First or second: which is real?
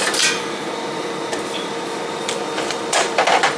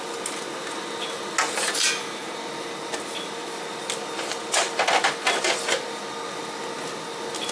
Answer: second